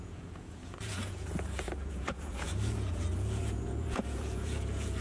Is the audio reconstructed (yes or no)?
yes